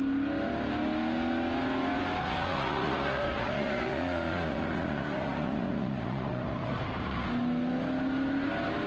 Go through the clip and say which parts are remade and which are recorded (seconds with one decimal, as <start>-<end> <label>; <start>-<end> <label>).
0.0-2.2 recorded; 2.2-7.3 remade; 7.3-8.9 recorded